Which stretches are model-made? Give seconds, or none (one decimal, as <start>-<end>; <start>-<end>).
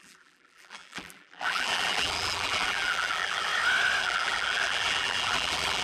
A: 0.0-3.5; 4.0-5.8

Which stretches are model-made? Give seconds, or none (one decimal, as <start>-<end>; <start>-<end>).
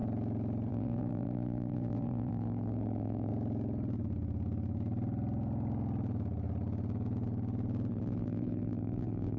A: 0.7-3.3; 7.9-9.4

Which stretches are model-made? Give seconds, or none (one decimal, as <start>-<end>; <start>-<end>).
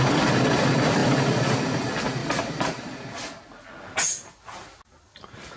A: 1.0-1.5; 2.2-3.1; 4.1-5.6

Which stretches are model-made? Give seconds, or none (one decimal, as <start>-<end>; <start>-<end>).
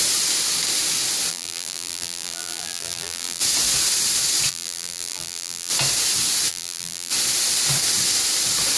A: 1.3-3.4; 4.5-5.7; 6.5-7.1